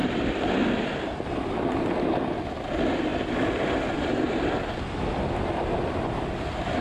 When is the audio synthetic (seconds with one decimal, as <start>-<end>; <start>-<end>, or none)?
none

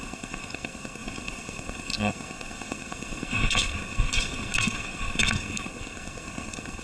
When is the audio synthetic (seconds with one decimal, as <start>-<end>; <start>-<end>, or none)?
0.0-6.8

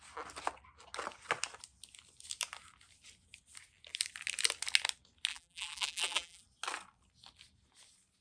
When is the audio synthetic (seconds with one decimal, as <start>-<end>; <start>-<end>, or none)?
5.3-6.4

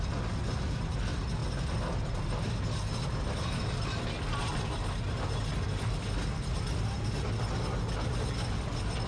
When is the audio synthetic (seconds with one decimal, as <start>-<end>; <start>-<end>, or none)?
none

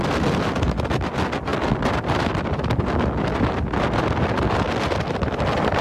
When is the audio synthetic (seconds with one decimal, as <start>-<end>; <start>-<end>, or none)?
none

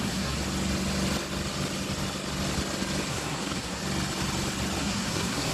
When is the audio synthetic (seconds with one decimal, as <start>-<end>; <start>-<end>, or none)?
0.0-0.4; 3.1-3.8; 4.8-5.5

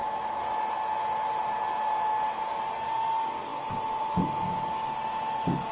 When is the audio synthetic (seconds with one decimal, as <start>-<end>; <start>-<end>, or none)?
none

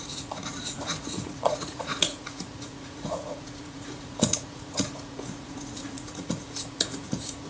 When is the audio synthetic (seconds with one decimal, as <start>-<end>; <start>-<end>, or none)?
0.0-7.5